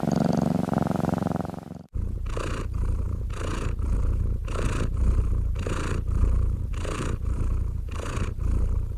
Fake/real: fake